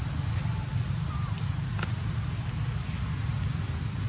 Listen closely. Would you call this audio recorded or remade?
recorded